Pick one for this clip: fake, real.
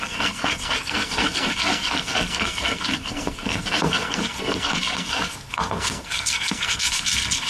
fake